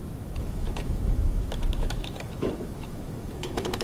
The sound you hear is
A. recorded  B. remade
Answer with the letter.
B